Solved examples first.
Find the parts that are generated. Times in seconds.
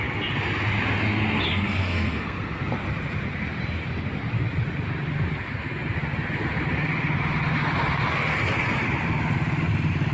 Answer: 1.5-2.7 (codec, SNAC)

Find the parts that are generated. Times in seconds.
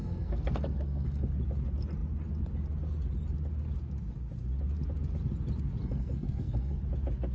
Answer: 0.0-1.3 (codec, SNAC); 5.8-6.8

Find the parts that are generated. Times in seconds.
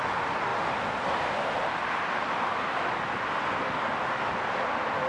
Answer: none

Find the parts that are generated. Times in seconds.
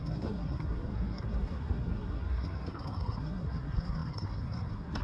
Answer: 0.0-5.0 (codec, SNAC)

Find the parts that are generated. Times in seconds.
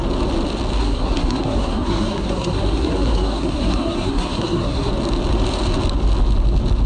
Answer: 0.8-4.9 (codec, SNAC)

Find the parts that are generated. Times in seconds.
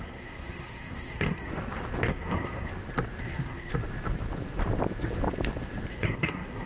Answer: 0.0-1.5 (codec, SNAC); 2.1-2.7; 3.2-3.7; 5.9-6.7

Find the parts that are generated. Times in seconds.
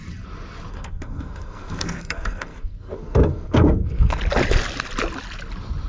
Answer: 0.7-4.2 (codec, SNAC)